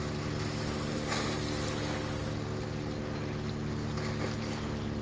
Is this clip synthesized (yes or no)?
yes